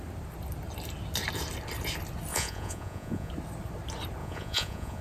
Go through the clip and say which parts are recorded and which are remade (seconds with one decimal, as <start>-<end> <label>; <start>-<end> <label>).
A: 0.0-2.3 recorded; 2.3-3.3 remade; 3.3-4.2 recorded; 4.2-5.0 remade